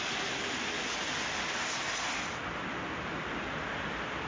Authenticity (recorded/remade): recorded